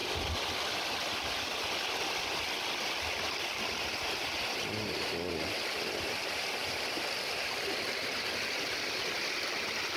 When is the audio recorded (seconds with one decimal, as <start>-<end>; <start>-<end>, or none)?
0.0-10.0